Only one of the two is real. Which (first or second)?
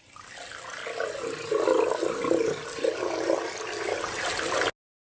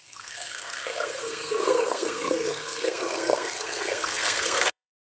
first